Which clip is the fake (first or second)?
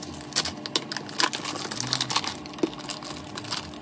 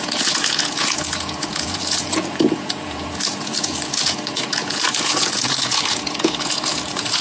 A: second